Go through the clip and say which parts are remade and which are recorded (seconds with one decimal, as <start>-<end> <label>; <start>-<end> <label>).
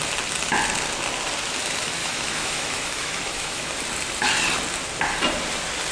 0.0-2.0 recorded; 2.0-3.8 remade; 3.8-5.9 recorded